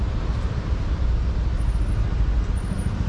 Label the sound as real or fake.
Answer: real